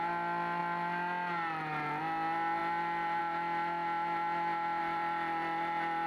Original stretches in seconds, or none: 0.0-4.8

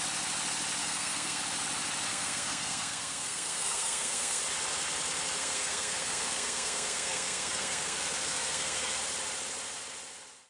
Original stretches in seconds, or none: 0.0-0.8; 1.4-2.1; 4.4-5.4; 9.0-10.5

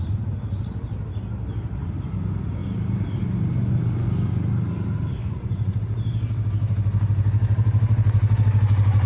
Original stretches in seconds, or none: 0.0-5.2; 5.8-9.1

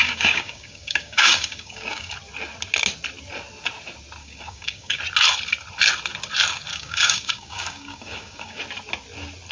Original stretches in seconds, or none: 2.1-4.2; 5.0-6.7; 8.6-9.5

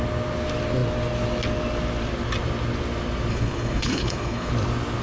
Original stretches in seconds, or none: 0.0-3.3; 4.5-5.0

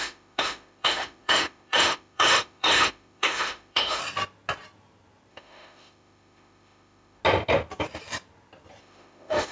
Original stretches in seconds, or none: 4.0-5.3; 7.2-8.8